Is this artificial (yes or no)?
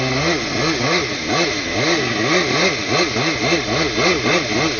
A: no